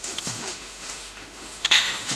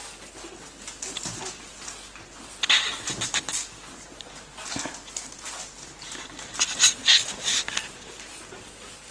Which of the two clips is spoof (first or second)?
first